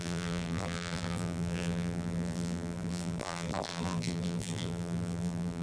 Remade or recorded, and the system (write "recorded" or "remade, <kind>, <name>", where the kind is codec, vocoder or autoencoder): remade, vocoder, BigVGAN v2